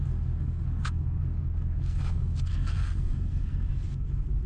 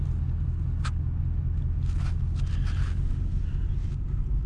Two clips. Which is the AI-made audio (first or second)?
first